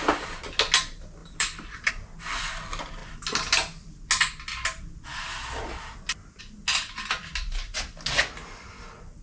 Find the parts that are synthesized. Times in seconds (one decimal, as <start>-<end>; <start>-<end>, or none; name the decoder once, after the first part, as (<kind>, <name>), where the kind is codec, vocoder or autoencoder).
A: 1.2-1.9 (vocoder, BigVGAN v2)